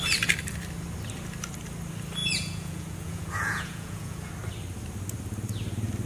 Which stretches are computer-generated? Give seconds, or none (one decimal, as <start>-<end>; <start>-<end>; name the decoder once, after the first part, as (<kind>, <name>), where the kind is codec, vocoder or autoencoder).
2.2-4.3 (vocoder, Vocos)